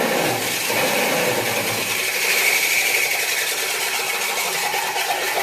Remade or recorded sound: recorded